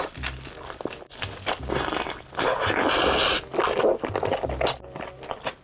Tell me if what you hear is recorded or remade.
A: recorded